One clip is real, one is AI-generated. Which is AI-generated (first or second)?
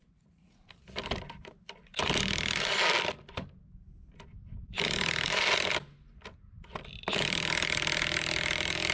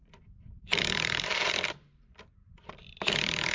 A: second